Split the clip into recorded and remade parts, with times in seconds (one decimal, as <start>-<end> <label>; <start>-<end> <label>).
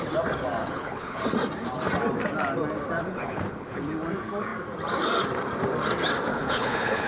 0.0-0.6 recorded; 0.6-1.2 remade; 1.2-3.0 recorded; 3.0-3.8 remade; 3.8-6.3 recorded; 6.3-7.1 remade